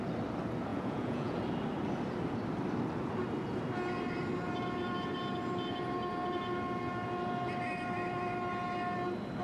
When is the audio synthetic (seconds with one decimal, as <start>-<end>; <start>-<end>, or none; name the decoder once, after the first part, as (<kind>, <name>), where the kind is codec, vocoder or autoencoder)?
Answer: 0.7-1.4 (vocoder, Vocos)